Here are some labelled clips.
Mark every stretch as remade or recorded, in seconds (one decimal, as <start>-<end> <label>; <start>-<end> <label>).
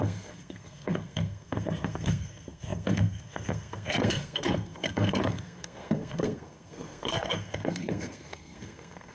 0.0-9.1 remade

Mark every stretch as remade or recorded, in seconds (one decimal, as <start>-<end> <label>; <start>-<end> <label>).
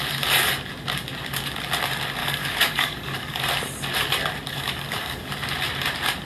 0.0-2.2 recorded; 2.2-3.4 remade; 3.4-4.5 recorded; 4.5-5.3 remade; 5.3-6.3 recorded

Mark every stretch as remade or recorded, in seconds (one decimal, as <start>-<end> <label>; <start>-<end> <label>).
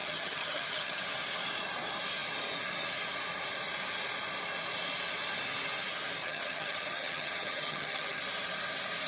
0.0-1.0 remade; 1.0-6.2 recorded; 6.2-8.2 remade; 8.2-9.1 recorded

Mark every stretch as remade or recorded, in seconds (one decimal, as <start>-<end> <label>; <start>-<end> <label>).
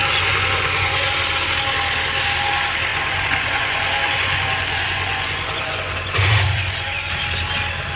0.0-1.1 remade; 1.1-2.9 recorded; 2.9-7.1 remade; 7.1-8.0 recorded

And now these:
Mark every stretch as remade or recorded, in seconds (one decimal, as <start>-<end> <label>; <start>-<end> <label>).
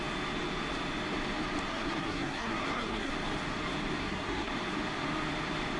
0.0-1.7 recorded; 1.7-3.1 remade; 3.1-4.0 recorded; 4.0-4.5 remade; 4.5-5.8 recorded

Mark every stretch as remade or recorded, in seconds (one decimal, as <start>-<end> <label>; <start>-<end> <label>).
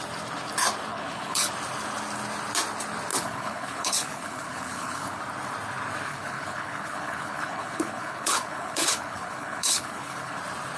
0.0-0.9 recorded; 0.9-1.5 remade; 1.5-3.1 recorded; 3.1-5.2 remade; 5.2-6.1 recorded; 6.1-10.4 remade; 10.4-10.8 recorded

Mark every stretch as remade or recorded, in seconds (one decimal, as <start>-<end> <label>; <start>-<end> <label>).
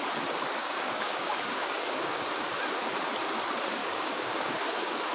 0.0-0.6 recorded; 0.6-2.3 remade; 2.3-3.8 recorded; 3.8-5.1 remade